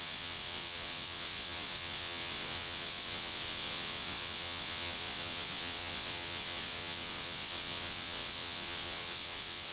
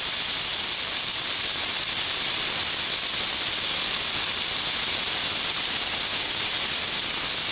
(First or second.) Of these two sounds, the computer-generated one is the first